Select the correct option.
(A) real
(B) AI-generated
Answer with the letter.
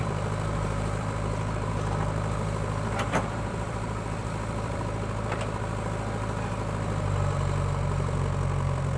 B